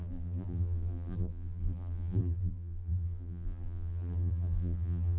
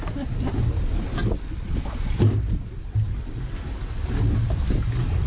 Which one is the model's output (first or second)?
first